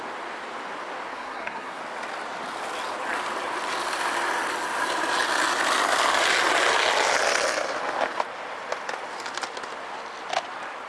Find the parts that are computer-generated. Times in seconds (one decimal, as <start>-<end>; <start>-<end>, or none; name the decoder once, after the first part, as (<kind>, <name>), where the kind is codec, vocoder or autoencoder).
1.1-1.8 (codec, SNAC)